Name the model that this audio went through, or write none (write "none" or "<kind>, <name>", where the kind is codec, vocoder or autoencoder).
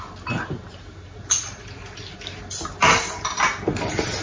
none